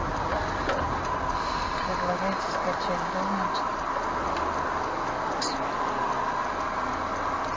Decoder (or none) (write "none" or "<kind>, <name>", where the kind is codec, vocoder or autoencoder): none